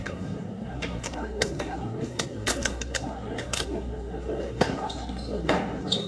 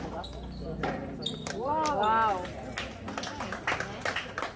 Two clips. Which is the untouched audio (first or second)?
second